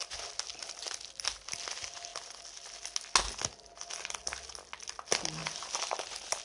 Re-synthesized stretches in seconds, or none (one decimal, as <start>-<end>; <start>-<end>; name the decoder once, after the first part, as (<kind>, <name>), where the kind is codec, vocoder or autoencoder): none